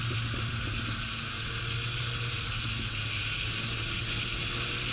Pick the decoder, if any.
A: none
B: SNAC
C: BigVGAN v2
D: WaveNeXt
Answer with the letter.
A